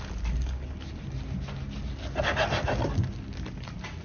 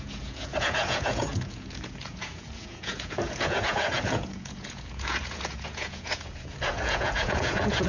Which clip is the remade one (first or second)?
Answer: second